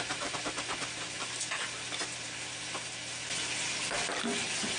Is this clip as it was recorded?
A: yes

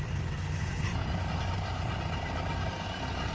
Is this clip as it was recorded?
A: no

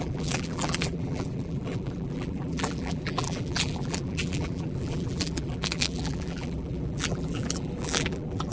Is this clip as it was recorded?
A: no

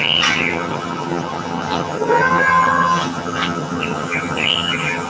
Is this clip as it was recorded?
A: no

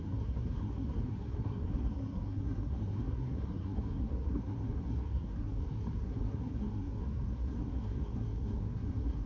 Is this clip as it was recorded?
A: no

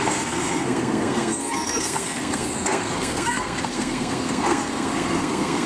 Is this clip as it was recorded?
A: no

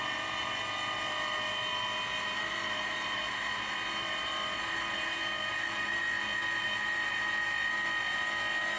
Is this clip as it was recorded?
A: yes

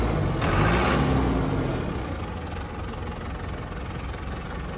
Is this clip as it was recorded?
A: yes